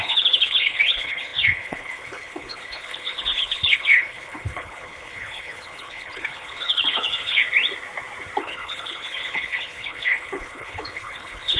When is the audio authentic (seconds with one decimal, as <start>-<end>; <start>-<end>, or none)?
7.4-8.4